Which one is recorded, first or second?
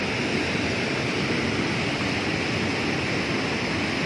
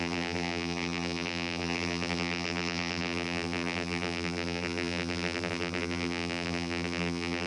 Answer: first